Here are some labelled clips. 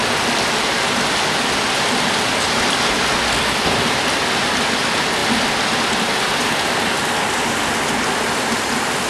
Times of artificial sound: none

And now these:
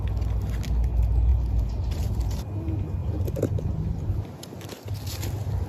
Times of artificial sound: 1.3-2.2 (vocoder, BigVGAN v2); 3.0-4.9